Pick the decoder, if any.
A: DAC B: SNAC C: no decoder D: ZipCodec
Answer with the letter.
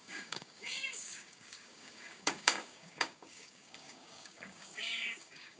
A